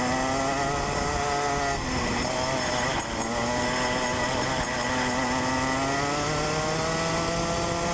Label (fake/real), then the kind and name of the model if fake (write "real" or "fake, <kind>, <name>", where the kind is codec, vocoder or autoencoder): real